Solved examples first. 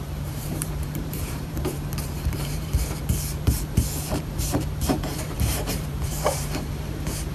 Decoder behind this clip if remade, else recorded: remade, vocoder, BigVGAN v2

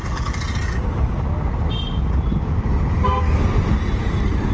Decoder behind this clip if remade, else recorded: recorded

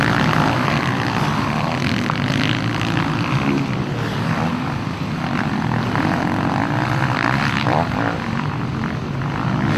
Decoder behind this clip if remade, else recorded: recorded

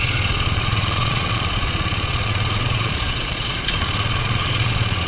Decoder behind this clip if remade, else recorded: remade, vocoder, Vocos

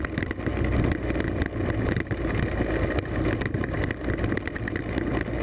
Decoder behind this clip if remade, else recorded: recorded